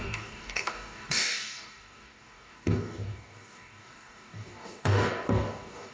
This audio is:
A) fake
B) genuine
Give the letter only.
A